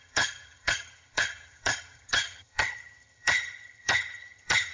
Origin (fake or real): fake